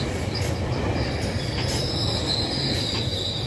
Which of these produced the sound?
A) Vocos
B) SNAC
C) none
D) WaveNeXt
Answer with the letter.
C